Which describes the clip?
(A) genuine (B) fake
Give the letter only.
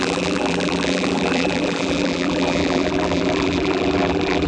B